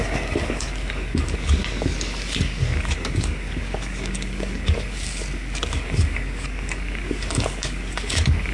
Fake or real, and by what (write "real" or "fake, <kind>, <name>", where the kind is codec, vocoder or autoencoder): fake, codec, DAC